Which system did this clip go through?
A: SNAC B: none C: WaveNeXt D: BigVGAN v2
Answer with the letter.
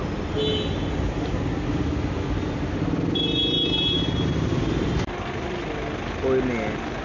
B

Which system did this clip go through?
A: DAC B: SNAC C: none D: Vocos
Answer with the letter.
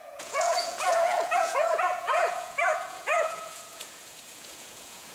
D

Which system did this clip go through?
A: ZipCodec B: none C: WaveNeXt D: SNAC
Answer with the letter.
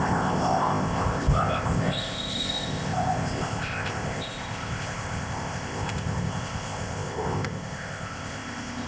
A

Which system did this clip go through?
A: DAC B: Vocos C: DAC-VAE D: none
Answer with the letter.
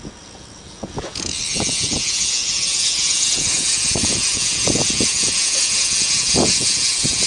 B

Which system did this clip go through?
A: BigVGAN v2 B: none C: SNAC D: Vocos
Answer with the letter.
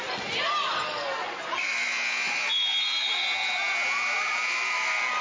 B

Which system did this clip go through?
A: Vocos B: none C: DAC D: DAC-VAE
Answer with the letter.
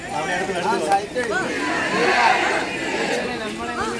B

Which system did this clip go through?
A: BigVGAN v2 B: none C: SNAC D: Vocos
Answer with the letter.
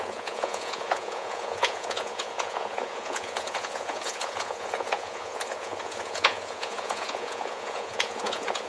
D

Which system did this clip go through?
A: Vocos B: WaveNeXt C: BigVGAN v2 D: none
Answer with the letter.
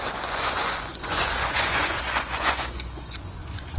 A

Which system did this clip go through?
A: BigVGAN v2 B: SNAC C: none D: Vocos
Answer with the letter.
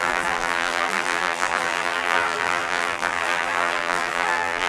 A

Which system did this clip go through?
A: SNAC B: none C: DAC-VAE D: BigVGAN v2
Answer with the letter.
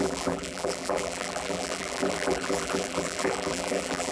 D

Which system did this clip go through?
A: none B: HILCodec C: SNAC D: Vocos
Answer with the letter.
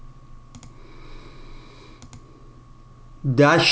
A